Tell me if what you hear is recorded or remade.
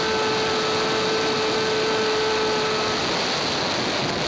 recorded